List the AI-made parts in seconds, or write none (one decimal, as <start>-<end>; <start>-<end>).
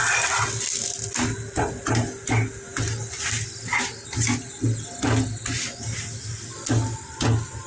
none